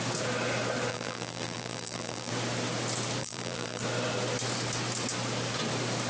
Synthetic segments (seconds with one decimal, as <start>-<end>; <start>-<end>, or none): 0.9-2.3; 3.2-3.8